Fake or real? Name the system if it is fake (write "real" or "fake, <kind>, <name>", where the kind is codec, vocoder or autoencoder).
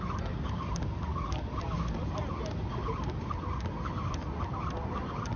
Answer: real